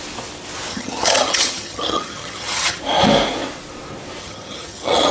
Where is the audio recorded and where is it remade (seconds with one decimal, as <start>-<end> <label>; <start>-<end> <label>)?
0.0-0.7 recorded; 0.7-2.8 remade; 2.8-4.2 recorded; 4.2-5.1 remade